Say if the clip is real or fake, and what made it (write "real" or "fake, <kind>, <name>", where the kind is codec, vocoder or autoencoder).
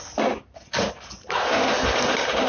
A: real